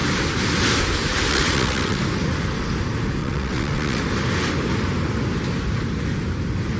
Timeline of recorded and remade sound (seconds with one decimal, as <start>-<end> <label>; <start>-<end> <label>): 0.0-1.3 recorded; 1.3-2.0 remade; 2.0-3.2 recorded; 3.2-4.0 remade; 4.0-6.8 recorded